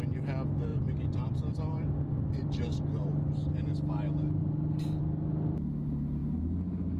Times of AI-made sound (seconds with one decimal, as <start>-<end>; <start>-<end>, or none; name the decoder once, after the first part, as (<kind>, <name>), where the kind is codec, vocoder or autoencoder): 0.7-2.8 (vocoder, BigVGAN v2)